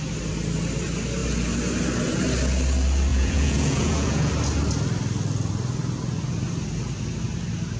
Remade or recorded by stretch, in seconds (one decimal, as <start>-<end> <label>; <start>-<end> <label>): 0.0-3.1 recorded; 3.1-4.3 remade; 4.3-7.8 recorded